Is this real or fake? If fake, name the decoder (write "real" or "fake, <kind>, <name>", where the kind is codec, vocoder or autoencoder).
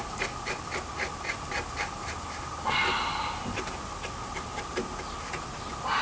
real